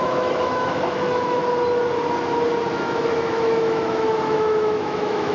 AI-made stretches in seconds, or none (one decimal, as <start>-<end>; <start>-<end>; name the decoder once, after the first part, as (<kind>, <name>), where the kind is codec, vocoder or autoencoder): 0.0-1.4 (autoencoder, DAC-VAE); 2.7-5.3